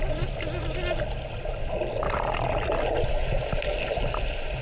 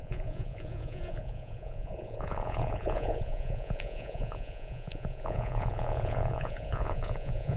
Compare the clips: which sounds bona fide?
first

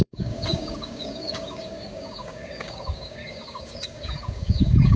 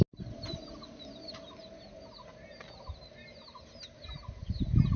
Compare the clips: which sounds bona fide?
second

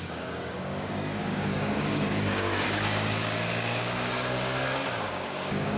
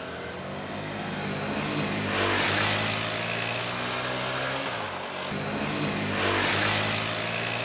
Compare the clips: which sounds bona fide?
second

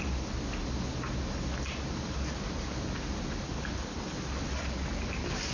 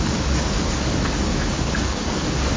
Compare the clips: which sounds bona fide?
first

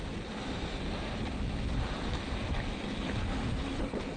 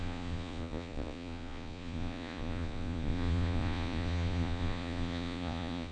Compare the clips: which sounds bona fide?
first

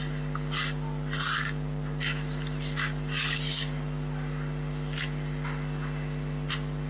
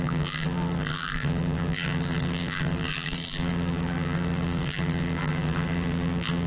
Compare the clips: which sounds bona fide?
first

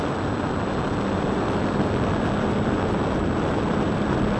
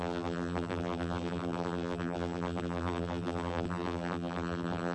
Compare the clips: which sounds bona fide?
first